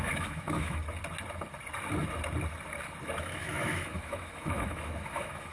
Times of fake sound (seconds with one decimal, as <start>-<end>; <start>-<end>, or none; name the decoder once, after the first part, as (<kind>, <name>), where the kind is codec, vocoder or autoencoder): 0.0-0.8 (autoencoder, DAC-VAE); 3.2-5.5

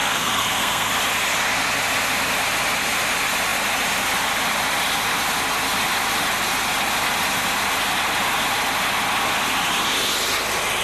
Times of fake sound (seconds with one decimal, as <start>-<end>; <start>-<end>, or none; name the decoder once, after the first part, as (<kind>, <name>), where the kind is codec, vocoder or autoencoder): 0.0-0.9 (codec, SNAC)

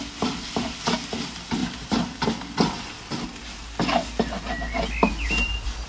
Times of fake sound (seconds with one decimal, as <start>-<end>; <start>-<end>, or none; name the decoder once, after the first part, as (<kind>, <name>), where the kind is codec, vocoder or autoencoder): none

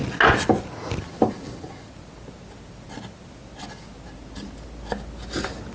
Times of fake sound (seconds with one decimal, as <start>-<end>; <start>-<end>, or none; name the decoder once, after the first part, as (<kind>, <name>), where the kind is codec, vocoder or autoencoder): none

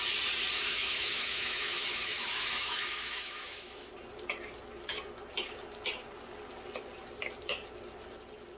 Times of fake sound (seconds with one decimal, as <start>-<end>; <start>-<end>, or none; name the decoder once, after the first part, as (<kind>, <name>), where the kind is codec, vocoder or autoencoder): 0.7-3.9 (autoencoder, DAC-VAE)

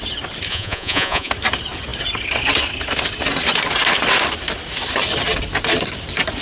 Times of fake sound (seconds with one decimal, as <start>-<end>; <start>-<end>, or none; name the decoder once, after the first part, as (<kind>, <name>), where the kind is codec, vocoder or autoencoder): 0.5-1.3 (vocoder, Vocos)

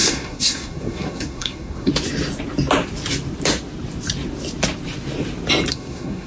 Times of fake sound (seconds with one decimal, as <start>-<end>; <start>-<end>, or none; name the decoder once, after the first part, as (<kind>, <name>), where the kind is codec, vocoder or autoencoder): 0.0-1.9 (codec, SNAC); 5.7-6.3